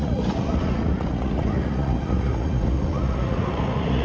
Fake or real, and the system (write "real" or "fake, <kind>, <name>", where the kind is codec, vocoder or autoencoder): fake, vocoder, Vocos